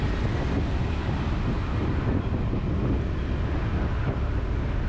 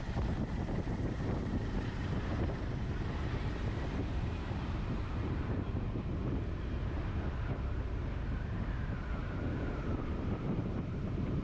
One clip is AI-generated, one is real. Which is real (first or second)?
first